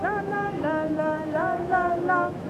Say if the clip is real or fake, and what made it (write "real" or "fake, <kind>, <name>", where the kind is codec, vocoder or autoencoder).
fake, autoencoder, DAC-VAE